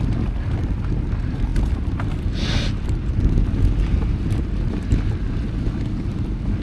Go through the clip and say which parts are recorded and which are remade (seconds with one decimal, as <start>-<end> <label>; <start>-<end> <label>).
0.0-6.6 recorded